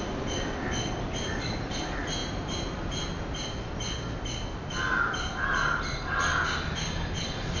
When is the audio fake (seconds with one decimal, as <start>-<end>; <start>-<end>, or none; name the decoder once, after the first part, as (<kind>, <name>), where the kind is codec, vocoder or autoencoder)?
none